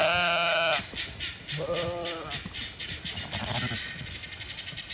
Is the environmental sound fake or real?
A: real